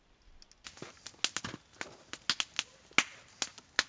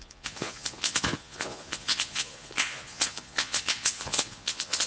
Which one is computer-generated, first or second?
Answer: second